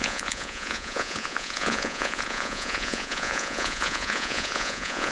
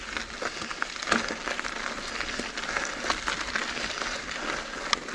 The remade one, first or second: first